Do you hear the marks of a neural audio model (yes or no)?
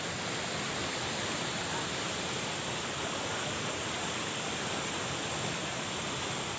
no